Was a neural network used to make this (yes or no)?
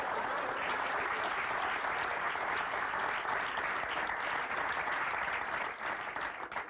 no